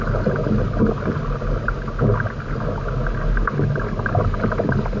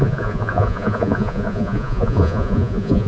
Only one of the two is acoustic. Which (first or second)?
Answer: first